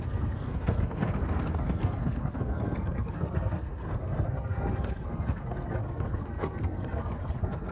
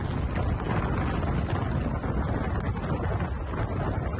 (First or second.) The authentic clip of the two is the second